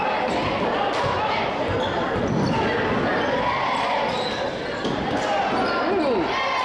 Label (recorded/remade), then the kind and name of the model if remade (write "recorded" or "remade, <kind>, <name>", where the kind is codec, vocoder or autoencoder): recorded